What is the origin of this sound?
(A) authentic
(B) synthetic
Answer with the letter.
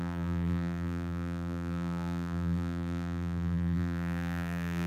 B